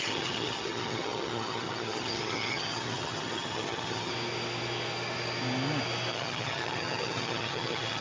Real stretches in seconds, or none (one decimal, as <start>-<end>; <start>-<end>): 4.1-6.1